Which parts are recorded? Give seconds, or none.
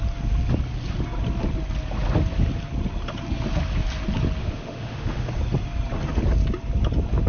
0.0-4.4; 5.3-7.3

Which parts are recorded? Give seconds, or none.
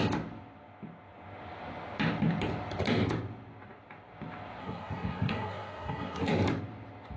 0.0-4.6; 6.3-7.2